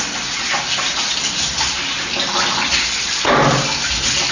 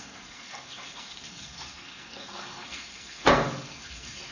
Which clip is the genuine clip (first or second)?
first